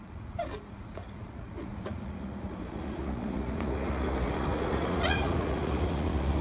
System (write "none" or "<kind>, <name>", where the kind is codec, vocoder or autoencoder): vocoder, Vocos